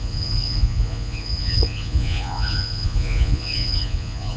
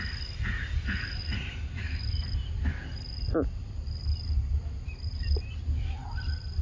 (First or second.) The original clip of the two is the second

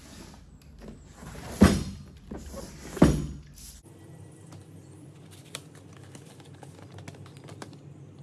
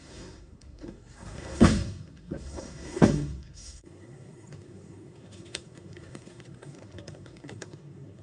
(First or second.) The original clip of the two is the first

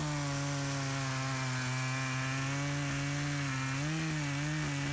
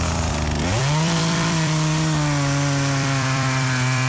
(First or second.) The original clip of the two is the first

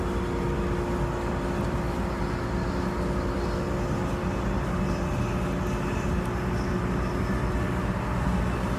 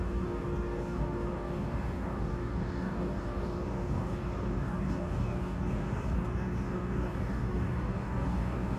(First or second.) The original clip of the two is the first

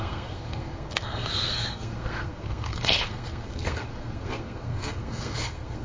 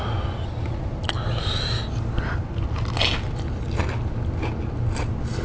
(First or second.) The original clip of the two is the second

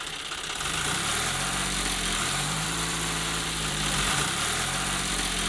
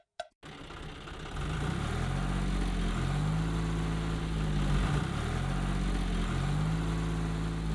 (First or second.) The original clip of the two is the second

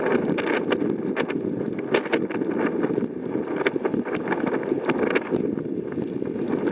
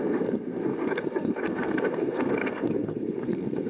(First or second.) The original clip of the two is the first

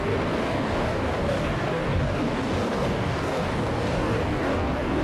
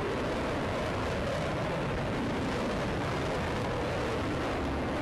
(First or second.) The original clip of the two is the second